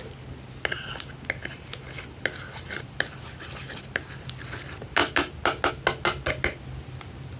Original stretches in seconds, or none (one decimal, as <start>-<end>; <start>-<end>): 0.0-7.4